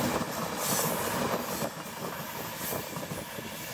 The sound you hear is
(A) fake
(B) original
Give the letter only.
B